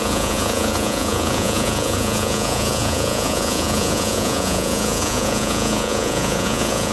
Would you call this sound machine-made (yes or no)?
yes